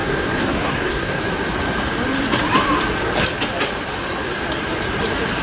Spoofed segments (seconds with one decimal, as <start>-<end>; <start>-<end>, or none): 0.0-1.2